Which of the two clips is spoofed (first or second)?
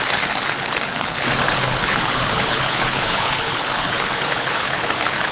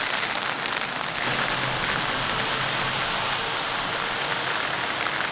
first